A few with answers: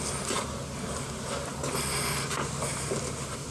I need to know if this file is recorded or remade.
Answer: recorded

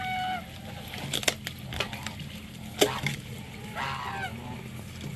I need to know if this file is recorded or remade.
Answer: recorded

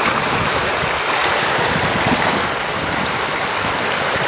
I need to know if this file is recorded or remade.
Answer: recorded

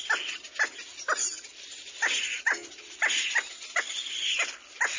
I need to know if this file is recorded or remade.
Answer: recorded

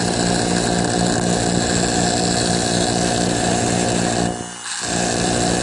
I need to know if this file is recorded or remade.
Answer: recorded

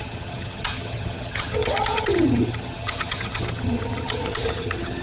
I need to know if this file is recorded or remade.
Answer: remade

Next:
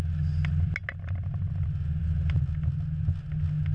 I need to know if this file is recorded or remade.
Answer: recorded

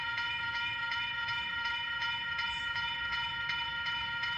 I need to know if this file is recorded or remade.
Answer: remade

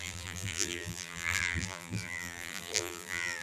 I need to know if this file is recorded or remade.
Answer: remade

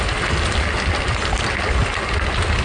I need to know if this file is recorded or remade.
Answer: recorded